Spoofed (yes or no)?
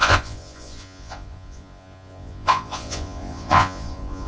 yes